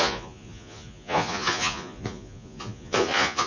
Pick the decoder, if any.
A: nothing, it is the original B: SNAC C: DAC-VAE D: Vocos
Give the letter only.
D